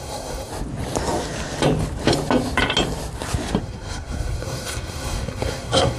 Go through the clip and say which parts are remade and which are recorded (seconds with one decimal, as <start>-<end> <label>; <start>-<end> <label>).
0.0-0.5 remade; 0.5-3.6 recorded; 3.6-6.0 remade